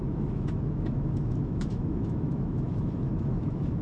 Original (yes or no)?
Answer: no